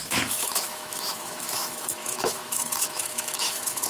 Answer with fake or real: fake